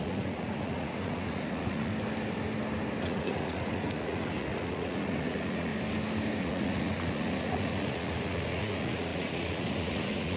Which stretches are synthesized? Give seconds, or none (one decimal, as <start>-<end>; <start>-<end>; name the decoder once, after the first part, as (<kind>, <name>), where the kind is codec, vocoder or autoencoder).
0.0-1.9 (vocoder, Vocos); 3.0-5.7; 6.4-10.4